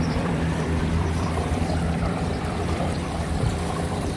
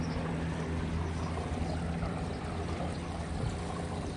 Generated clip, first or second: first